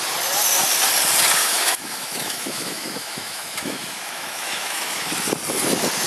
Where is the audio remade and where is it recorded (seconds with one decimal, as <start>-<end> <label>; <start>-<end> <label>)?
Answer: 0.0-1.4 recorded; 1.4-5.1 remade; 5.1-6.1 recorded